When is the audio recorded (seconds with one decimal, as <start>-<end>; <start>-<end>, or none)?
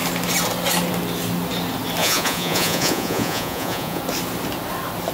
0.0-2.0; 4.0-5.1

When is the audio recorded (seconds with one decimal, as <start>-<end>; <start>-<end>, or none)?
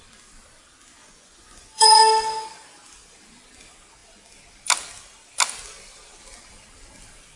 0.0-1.0; 2.0-7.4